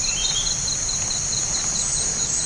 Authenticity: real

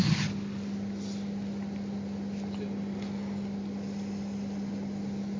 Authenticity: real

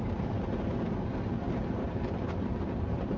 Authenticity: real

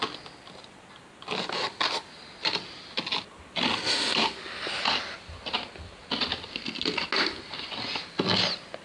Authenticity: real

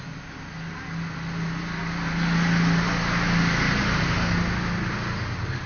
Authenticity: real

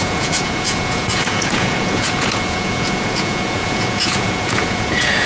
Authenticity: fake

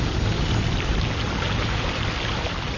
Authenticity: real